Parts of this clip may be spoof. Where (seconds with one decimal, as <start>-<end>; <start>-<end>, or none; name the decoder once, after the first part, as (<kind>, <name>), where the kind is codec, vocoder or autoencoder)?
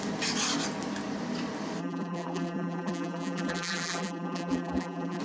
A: 1.8-5.2 (vocoder, BigVGAN v2)